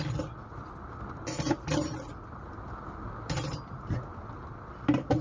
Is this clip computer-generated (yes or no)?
no